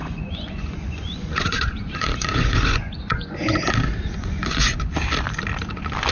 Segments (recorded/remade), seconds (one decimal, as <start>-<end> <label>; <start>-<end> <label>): 0.0-3.7 remade; 3.7-4.2 recorded; 4.2-4.9 remade; 4.9-6.1 recorded